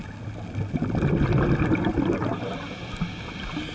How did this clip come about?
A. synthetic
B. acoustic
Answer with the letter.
B